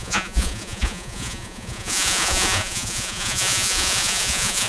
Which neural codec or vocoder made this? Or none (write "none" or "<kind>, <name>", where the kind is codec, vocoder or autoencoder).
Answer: vocoder, Vocos